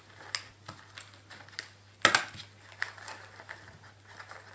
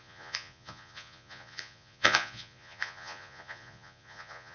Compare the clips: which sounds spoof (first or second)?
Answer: second